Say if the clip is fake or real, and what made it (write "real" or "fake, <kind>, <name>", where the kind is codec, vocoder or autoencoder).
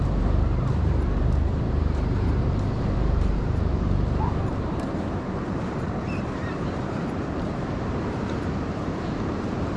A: fake, vocoder, BigVGAN v2